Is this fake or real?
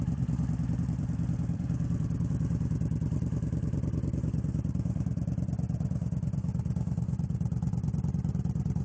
fake